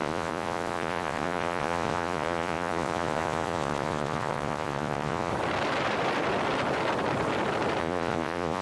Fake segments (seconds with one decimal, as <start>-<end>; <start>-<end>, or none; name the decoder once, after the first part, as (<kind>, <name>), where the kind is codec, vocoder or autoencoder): 0.0-5.3 (vocoder, Vocos); 7.8-8.6